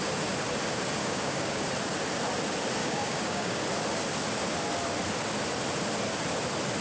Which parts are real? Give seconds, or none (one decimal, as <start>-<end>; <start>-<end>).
0.0-1.0; 1.7-2.8; 3.6-6.8